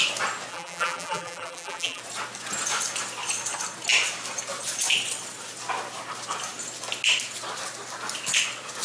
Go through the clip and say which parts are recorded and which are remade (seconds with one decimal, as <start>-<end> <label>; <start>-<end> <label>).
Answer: 0.0-0.5 recorded; 0.5-2.0 remade; 2.0-8.8 recorded